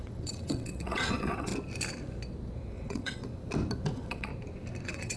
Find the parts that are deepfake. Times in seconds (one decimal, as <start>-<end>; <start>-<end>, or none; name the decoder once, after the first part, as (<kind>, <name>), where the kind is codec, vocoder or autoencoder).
0.0-1.5 (vocoder, WaveNeXt); 2.7-3.3; 3.9-4.3; 4.8-5.2